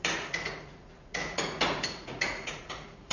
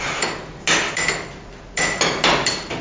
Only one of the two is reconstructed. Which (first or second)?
first